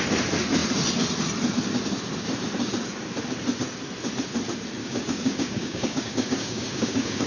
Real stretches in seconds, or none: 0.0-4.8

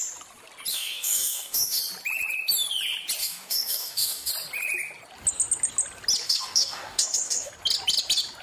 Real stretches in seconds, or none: 0.0-0.7; 1.8-3.2; 4.3-6.2; 7.5-8.4

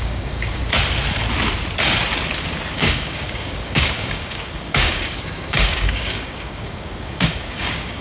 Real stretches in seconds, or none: 0.6-2.7

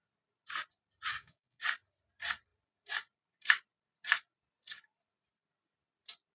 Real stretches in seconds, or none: 0.0-1.1; 1.6-6.3